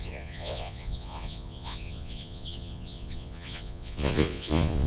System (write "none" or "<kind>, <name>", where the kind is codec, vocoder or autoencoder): vocoder, Vocos